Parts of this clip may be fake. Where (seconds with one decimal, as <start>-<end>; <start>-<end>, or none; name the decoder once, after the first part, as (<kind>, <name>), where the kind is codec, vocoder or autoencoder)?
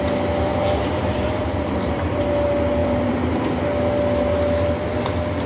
0.5-2.2 (vocoder, BigVGAN v2); 2.8-3.5